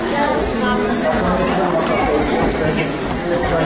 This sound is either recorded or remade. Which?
recorded